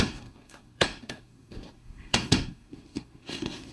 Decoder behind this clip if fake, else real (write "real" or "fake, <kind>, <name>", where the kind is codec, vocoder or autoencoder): fake, codec, SNAC